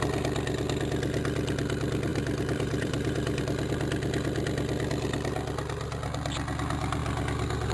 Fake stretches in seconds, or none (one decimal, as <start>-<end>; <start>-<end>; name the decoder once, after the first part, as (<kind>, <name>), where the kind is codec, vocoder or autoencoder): 2.1-3.4 (vocoder, BigVGAN v2)